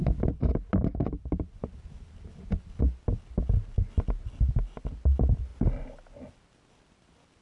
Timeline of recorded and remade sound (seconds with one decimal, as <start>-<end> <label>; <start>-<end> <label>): 0.0-7.4 recorded